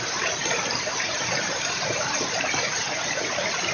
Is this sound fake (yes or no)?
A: yes